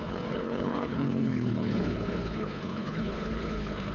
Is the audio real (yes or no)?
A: no